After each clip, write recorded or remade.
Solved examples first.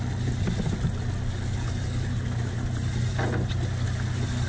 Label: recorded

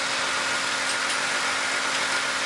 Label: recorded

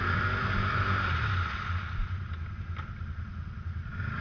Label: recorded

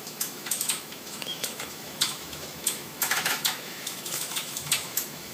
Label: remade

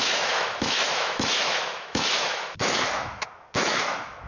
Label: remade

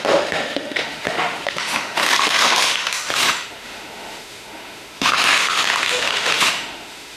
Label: remade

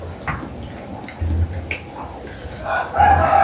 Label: recorded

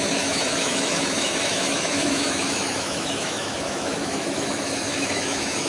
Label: remade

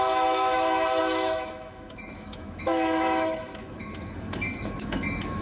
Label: remade